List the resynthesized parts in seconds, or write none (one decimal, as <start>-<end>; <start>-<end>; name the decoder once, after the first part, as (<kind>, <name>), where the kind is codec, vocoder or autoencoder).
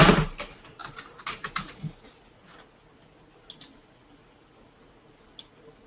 none